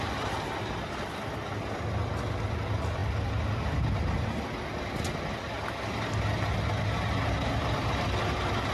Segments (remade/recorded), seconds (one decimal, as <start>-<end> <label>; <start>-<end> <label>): 0.0-8.7 recorded